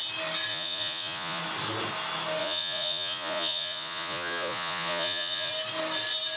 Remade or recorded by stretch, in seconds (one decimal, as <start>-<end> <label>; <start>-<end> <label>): 0.0-0.5 recorded; 0.5-1.4 remade; 1.4-2.4 recorded; 2.4-5.5 remade; 5.5-6.4 recorded